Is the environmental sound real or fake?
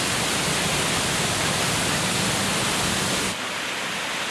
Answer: real